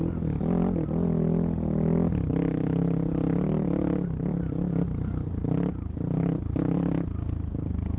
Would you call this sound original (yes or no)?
yes